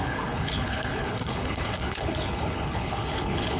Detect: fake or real fake